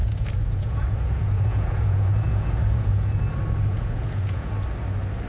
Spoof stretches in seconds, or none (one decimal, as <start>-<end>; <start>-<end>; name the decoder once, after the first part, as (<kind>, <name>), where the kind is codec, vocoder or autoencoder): 0.0-3.2 (vocoder, Vocos); 3.7-4.6

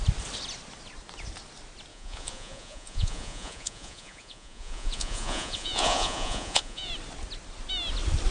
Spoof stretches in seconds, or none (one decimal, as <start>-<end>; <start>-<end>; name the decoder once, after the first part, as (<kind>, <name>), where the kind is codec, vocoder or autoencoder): 1.9-6.9 (vocoder, Vocos)